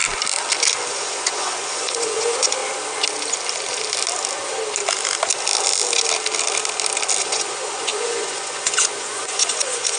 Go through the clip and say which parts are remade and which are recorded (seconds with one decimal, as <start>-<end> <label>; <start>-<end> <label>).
0.0-0.9 recorded; 0.9-2.6 remade; 2.6-7.2 recorded; 7.2-10.0 remade